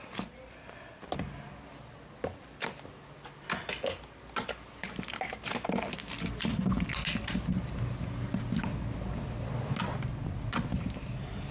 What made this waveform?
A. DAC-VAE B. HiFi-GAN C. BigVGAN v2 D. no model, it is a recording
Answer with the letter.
D